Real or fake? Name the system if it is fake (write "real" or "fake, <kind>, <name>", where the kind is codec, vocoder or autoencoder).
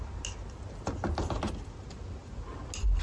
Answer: real